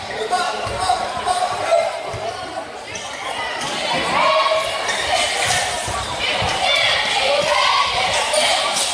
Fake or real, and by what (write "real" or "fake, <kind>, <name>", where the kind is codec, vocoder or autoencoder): fake, vocoder, BigVGAN v2